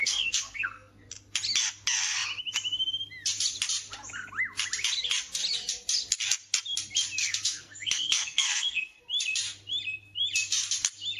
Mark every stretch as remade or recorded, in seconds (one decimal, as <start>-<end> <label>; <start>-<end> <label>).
0.0-1.1 remade; 1.1-7.2 recorded; 7.2-9.0 remade; 9.0-11.2 recorded